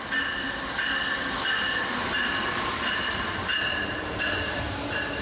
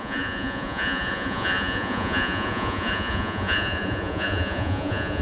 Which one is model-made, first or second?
second